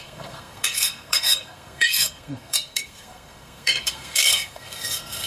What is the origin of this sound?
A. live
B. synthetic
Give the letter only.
B